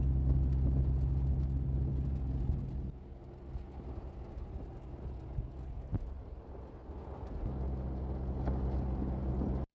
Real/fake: real